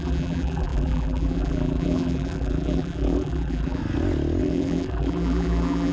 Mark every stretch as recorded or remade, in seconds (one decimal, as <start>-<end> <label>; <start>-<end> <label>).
0.0-3.8 remade; 3.8-4.4 recorded; 4.4-5.9 remade